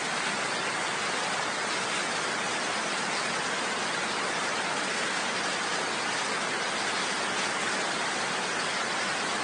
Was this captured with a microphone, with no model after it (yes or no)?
yes